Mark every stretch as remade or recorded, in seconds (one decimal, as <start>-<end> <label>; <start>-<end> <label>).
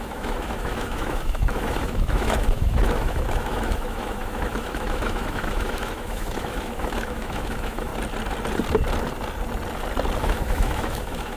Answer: 0.0-7.9 remade; 7.9-10.2 recorded; 10.2-11.4 remade